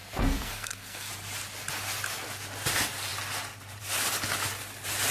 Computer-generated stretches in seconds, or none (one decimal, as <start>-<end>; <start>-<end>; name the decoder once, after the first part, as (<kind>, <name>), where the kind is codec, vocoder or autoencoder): 0.0-1.1 (codec, SNAC)

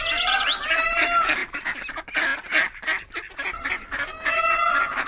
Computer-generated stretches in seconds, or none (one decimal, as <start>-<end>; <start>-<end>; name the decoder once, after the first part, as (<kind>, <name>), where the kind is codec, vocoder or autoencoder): none

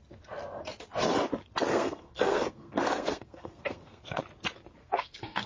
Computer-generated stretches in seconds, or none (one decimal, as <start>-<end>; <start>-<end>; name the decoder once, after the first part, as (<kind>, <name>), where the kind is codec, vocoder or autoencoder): 1.7-4.2 (codec, SNAC); 4.8-5.5

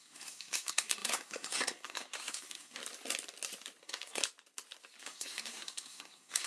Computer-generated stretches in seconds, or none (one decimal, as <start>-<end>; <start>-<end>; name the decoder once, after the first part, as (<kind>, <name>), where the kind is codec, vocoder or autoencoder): 0.0-2.8 (codec, SNAC); 3.8-4.2; 5.0-6.5

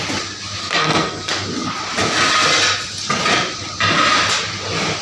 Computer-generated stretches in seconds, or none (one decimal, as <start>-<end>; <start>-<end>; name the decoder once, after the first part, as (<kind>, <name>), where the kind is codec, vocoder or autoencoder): 0.6-1.3 (codec, SNAC)

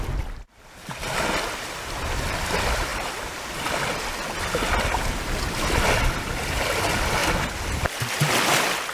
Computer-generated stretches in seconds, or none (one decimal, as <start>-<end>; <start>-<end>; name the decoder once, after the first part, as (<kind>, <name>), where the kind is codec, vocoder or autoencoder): none

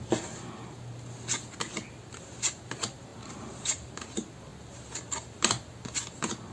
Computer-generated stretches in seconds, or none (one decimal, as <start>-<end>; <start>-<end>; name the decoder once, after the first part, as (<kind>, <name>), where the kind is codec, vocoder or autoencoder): none